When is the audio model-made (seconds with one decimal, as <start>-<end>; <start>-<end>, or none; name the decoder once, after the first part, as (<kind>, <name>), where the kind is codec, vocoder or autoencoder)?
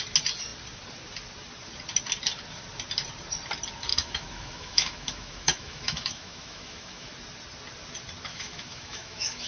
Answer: 3.9-7.1 (autoencoder, DAC-VAE); 8.3-9.5